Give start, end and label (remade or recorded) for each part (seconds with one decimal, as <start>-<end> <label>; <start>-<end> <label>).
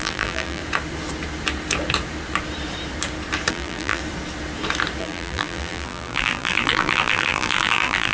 0.0-0.6 remade; 0.6-3.5 recorded; 3.5-4.0 remade; 4.0-5.0 recorded; 5.0-8.1 remade